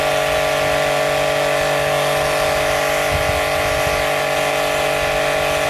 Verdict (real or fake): real